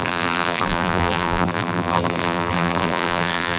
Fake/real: fake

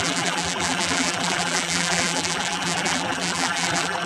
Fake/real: fake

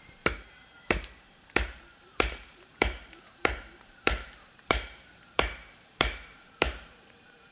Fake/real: fake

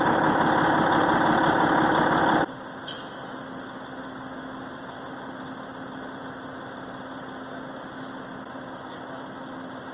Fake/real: real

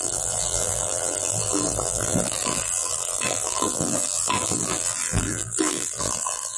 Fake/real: fake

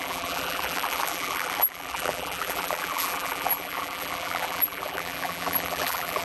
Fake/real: fake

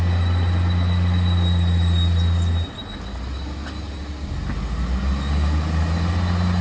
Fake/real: real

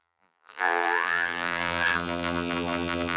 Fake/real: fake